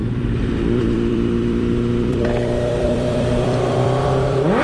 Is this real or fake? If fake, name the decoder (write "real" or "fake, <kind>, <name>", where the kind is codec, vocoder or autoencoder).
fake, vocoder, BigVGAN v2